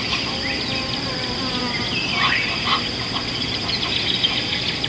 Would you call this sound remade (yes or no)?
no